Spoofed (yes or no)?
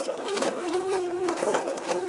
yes